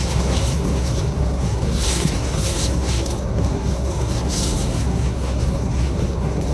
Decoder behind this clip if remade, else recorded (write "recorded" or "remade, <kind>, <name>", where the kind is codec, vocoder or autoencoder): remade, codec, SNAC